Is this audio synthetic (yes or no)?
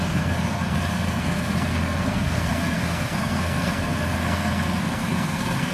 yes